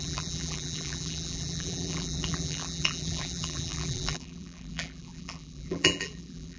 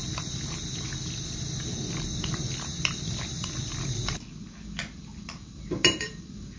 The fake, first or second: first